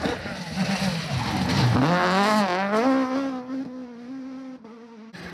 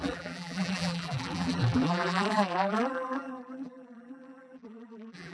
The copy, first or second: second